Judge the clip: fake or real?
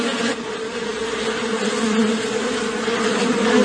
real